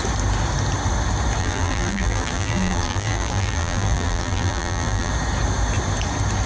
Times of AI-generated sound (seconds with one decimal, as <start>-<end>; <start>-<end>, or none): 1.4-5.1